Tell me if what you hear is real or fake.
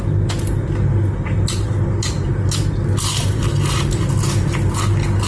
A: real